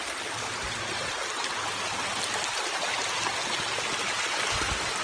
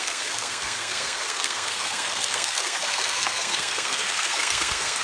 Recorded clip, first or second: first